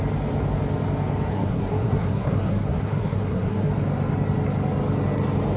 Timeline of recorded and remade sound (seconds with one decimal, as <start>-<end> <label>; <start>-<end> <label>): 0.0-1.3 recorded; 1.3-3.7 remade; 3.7-5.6 recorded